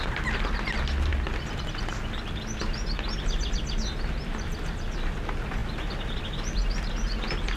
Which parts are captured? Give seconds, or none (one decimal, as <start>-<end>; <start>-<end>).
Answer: 0.0-7.6